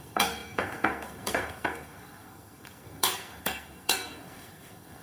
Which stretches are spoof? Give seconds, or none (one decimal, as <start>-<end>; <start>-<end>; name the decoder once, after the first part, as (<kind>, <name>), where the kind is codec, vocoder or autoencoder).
0.0-5.0 (codec, SNAC)